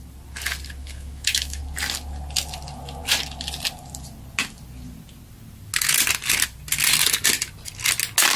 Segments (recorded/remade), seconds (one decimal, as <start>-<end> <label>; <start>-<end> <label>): 0.0-0.8 recorded; 0.8-1.6 remade; 1.6-8.4 recorded